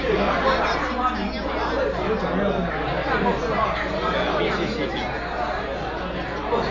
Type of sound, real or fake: real